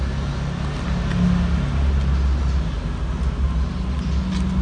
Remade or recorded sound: recorded